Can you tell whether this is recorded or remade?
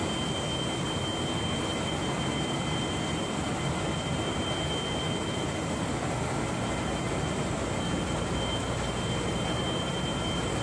recorded